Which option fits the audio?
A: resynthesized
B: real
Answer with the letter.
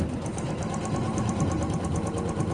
B